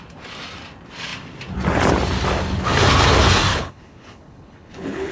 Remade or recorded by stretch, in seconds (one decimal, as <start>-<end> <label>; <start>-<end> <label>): 0.0-3.5 recorded; 3.5-5.1 remade